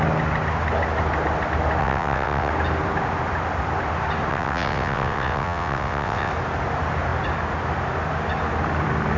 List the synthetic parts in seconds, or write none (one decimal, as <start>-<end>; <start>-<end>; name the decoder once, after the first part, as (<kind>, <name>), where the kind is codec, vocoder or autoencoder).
1.8-2.5 (vocoder, WaveNeXt); 4.3-6.3